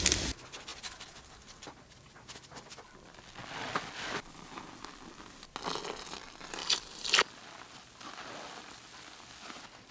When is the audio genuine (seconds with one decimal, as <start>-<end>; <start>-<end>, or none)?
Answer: 0.0-6.6; 7.3-9.9